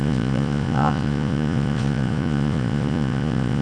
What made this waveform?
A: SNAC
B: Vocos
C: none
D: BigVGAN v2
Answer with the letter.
B